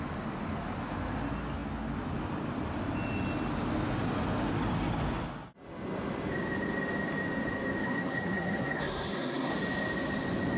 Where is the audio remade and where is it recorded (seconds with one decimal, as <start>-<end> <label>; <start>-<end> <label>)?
0.0-7.8 recorded; 7.8-9.5 remade; 9.5-10.6 recorded

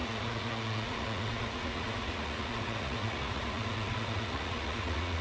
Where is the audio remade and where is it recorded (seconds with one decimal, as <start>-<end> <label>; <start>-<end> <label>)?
0.0-5.2 remade